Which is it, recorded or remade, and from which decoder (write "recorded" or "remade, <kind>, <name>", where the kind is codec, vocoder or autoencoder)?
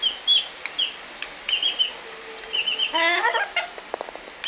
recorded